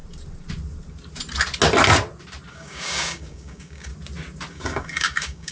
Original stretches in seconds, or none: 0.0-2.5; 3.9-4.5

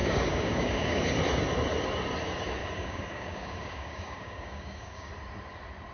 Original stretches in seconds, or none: 1.0-2.6; 5.1-5.9

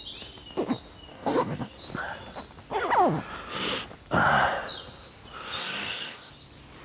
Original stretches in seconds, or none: 0.0-1.1; 1.7-5.6; 6.3-6.8

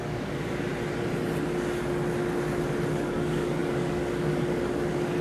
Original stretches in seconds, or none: 0.7-2.9